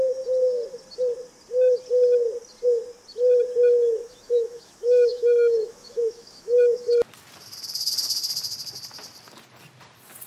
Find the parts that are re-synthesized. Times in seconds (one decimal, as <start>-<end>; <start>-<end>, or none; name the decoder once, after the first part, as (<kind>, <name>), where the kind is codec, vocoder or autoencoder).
3.8-7.1 (autoencoder, DAC-VAE)